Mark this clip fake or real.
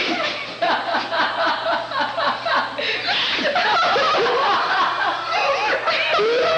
real